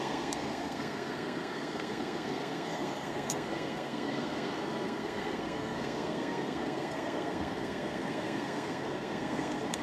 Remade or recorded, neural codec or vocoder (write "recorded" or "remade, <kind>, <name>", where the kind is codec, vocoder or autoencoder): remade, codec, SNAC